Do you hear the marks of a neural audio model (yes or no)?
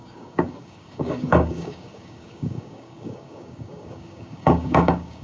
yes